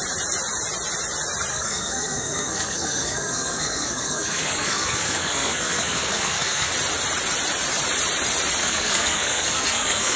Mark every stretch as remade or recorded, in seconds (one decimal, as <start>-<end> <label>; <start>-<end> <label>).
0.0-1.5 recorded; 1.5-6.7 remade; 6.7-8.6 recorded; 8.6-10.2 remade